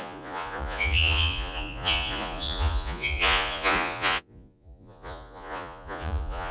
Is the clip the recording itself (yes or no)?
no